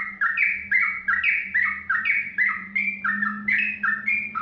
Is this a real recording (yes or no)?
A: yes